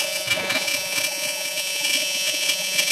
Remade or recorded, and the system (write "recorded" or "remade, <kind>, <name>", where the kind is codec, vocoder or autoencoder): remade, vocoder, Vocos